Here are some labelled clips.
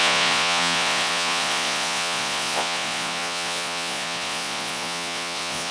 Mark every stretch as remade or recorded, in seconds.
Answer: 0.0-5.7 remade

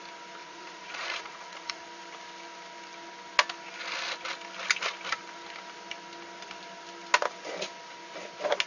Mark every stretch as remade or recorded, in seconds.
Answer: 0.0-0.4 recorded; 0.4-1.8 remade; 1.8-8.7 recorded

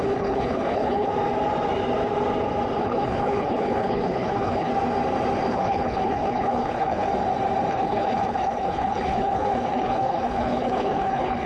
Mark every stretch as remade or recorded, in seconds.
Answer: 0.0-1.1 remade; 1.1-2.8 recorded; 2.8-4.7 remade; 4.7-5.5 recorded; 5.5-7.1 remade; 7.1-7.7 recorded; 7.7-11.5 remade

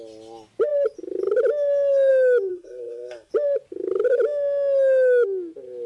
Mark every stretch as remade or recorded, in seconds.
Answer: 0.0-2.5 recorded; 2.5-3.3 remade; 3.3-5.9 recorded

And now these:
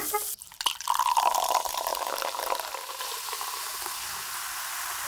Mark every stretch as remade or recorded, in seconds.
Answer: 0.0-5.1 recorded